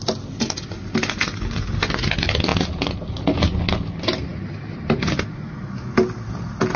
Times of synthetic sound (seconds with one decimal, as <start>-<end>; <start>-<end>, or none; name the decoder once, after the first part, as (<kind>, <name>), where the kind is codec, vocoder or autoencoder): none